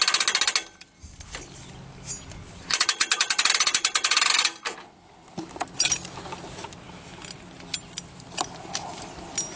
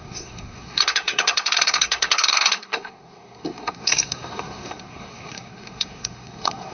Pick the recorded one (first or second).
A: first